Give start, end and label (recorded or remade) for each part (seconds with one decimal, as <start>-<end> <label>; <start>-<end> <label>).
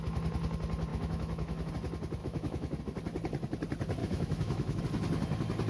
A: 0.0-0.9 recorded; 0.9-1.7 remade; 1.7-2.2 recorded; 2.2-2.8 remade; 2.8-4.0 recorded; 4.0-4.8 remade; 4.8-5.7 recorded